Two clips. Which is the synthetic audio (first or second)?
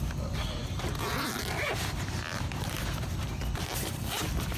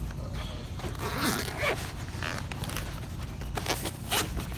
first